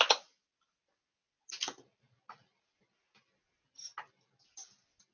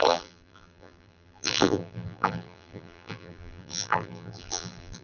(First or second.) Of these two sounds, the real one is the first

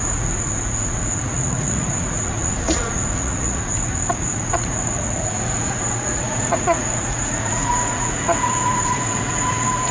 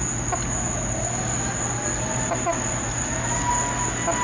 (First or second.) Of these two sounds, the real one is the second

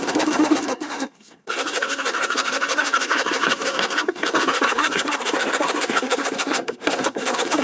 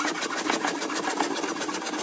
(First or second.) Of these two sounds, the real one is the second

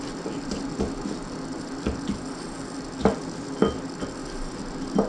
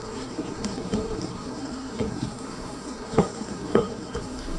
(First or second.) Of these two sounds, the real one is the first